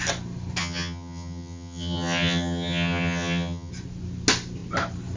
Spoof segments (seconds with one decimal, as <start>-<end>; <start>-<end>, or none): 0.6-3.7